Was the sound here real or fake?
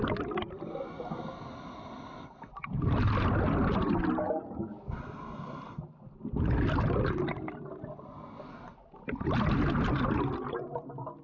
real